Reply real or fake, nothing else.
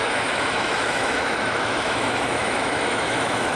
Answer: fake